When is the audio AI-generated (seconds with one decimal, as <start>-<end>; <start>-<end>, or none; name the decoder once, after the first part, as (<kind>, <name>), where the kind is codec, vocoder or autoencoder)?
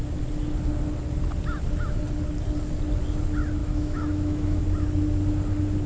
3.6-4.6 (autoencoder, DAC-VAE)